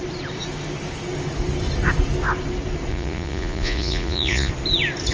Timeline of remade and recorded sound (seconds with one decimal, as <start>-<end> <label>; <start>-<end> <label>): 0.0-2.9 recorded; 2.9-4.5 remade; 4.5-5.1 recorded